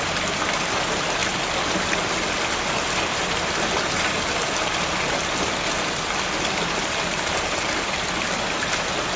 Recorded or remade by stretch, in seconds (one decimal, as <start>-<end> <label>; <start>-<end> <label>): 0.0-9.2 recorded